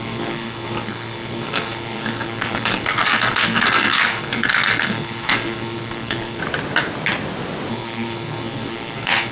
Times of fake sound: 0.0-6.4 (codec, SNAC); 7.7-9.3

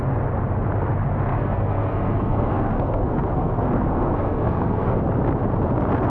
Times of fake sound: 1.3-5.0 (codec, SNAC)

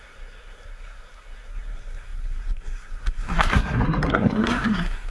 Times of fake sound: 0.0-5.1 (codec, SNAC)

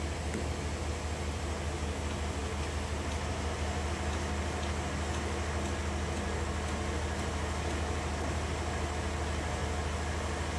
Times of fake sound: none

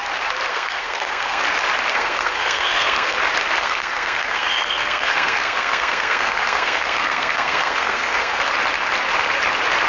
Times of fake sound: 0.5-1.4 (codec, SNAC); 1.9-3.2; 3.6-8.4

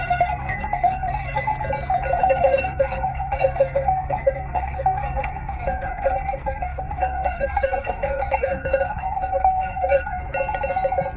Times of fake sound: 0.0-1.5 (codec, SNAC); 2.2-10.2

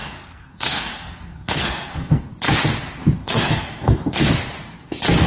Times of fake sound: 0.0-2.3 (codec, SNAC); 3.2-4.3

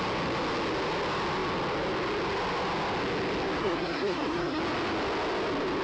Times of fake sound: 3.6-4.6 (codec, SNAC)